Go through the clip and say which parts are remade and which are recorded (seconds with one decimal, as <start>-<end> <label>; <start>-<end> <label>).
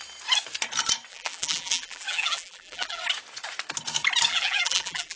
0.0-1.1 recorded; 1.1-3.0 remade; 3.0-4.3 recorded; 4.3-5.2 remade